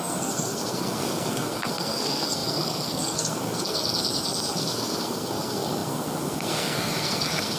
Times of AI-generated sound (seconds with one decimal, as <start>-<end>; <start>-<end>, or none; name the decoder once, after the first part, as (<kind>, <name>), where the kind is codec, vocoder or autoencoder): 0.0-7.6 (codec, SNAC)